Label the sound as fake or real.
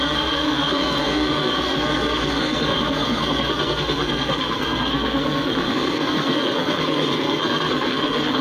fake